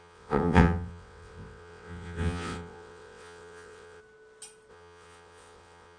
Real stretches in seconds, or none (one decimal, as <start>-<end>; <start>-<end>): 4.0-4.7

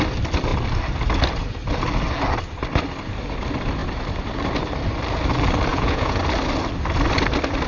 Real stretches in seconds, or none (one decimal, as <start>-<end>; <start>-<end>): 0.0-5.7; 6.2-7.7